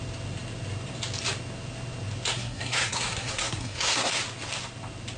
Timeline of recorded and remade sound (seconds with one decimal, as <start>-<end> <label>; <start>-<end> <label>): 0.0-2.3 recorded; 2.3-4.1 remade; 4.1-5.2 recorded